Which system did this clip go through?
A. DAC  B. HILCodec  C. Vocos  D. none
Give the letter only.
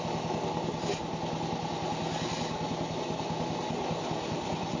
D